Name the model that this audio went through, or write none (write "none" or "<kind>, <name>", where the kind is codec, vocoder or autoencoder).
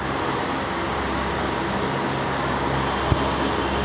none